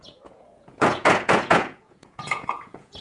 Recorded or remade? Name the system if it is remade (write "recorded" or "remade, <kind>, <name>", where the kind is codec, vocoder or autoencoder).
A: remade, vocoder, Vocos